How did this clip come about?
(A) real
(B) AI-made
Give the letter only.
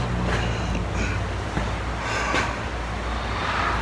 A